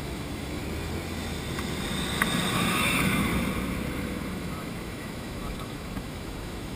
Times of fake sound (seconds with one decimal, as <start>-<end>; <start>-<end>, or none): 0.0-0.6; 2.5-3.3; 3.9-6.8